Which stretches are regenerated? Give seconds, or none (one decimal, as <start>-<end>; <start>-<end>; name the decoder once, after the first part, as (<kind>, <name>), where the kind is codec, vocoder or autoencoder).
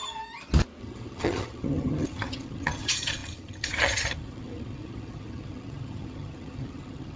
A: 0.8-7.2 (vocoder, HiFi-GAN)